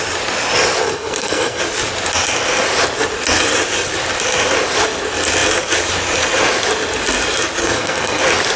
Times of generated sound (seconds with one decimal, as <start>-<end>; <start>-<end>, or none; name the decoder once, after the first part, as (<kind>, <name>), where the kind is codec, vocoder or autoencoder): 0.8-1.6 (codec, SNAC); 7.6-8.2